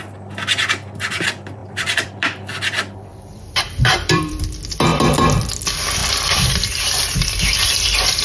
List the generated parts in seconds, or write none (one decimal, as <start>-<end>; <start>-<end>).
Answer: 1.6-4.4; 6.0-7.4